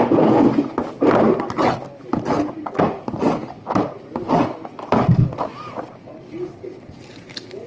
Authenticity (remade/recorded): recorded